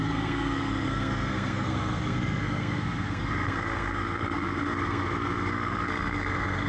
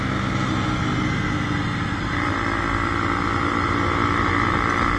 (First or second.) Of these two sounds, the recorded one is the second